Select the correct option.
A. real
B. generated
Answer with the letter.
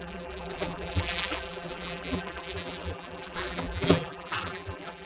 B